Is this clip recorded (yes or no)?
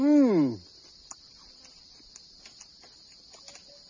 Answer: yes